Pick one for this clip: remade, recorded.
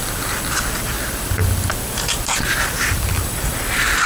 remade